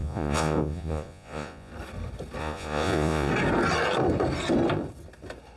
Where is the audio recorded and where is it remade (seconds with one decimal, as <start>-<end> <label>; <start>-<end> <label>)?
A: 0.0-1.7 remade; 1.7-2.4 recorded; 2.4-3.3 remade; 3.3-5.6 recorded